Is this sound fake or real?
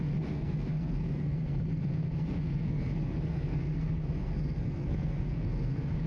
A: fake